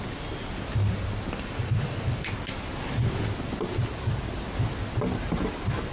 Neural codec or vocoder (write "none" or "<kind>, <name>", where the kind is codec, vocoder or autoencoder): none